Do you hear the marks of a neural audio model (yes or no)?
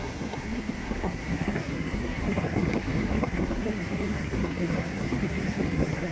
yes